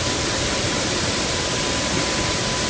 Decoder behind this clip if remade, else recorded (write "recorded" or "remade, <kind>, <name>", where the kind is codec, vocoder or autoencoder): recorded